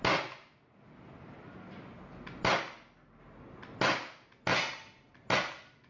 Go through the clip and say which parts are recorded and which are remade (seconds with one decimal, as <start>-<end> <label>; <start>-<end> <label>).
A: 0.0-5.9 recorded

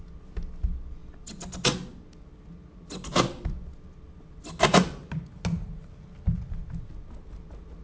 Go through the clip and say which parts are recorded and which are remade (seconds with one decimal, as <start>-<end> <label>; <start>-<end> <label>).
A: 0.0-7.8 recorded

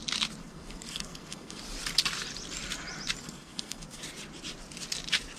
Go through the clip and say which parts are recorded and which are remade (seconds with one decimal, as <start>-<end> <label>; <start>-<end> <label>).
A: 0.0-0.4 recorded; 0.4-1.6 remade; 1.6-3.2 recorded; 3.2-4.0 remade; 4.0-5.4 recorded